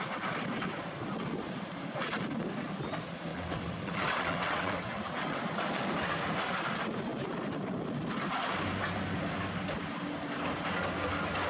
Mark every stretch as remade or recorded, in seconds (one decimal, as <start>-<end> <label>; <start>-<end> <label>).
0.0-3.3 recorded; 3.3-5.4 remade; 5.4-11.5 recorded